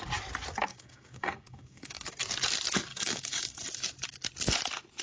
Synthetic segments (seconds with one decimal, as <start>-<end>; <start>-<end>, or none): 0.7-2.0; 2.9-3.6